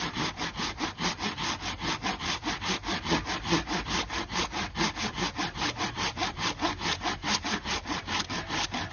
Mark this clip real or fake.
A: real